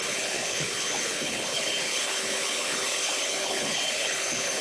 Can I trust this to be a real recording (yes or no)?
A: no